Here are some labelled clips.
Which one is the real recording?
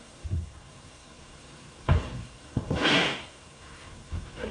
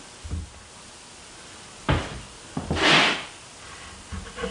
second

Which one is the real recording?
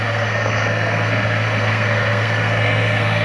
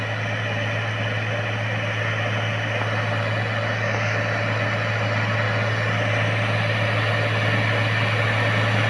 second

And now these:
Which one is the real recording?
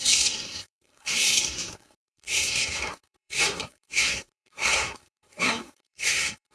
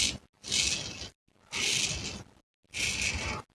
second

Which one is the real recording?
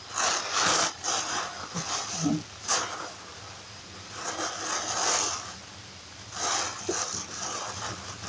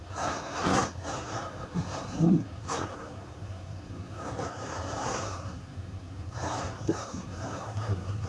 first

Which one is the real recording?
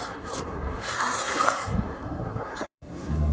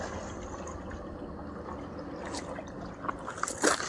second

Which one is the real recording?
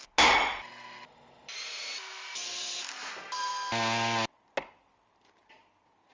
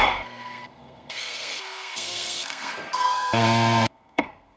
first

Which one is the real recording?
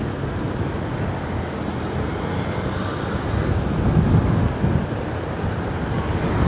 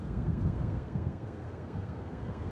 first